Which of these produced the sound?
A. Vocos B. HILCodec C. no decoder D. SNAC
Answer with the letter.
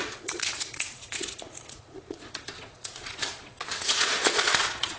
A